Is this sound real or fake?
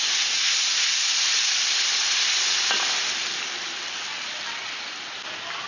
real